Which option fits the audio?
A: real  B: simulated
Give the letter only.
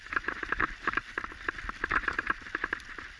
B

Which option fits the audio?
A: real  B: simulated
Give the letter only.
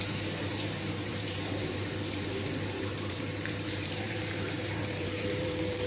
B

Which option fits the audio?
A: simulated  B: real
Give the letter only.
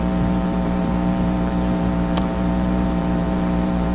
A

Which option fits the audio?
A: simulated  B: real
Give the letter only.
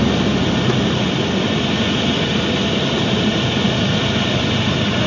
B